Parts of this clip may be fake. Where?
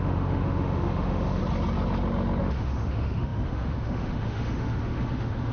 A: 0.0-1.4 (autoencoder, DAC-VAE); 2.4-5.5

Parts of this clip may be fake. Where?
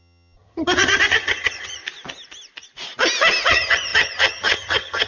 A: 0.0-1.8 (vocoder, HiFi-GAN); 3.5-5.1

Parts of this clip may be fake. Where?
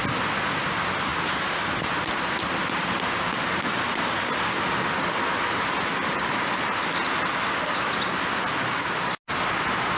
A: none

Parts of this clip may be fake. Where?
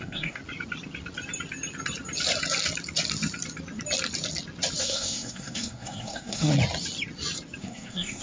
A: 0.0-0.4 (codec, SNAC); 4.8-6.5; 7.6-8.2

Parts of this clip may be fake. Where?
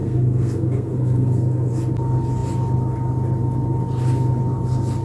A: 0.0-1.7 (codec, SNAC)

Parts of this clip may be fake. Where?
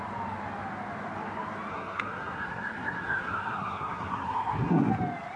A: 1.7-4.9 (codec, SNAC)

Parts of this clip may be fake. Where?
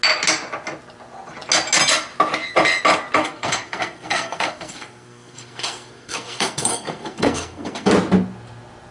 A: 3.2-7.9 (codec, SNAC)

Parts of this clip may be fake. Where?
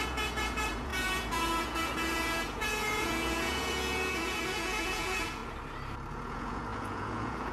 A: 0.0-5.4 (vocoder, Vocos); 6.1-7.5